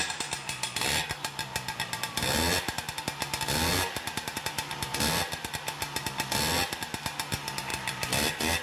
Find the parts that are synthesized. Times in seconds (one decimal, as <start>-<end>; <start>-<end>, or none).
none